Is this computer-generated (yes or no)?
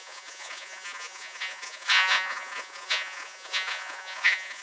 yes